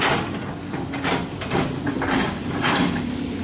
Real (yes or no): yes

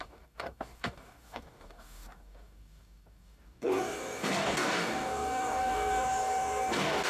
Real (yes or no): no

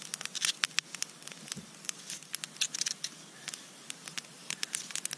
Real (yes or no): yes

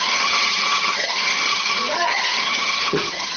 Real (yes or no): no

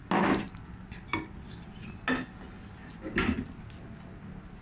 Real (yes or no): yes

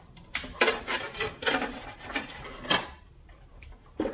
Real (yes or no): no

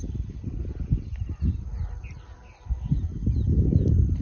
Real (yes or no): yes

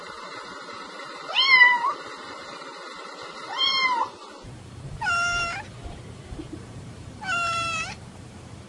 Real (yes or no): no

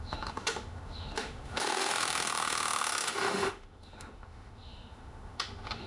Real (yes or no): no